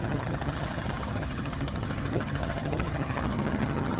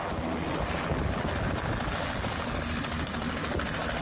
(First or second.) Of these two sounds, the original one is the second